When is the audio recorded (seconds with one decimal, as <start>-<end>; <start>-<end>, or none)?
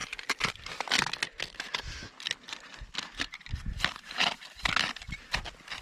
0.0-5.8